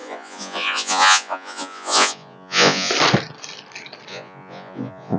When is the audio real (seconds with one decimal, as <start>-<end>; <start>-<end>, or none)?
2.9-4.1